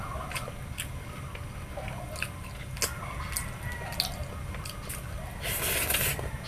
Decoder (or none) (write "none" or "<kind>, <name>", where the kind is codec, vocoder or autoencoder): none